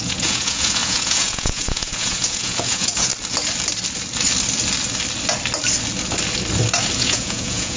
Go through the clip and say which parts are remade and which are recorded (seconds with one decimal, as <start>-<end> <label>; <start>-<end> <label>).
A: 0.0-3.1 remade; 3.1-7.0 recorded; 7.0-7.8 remade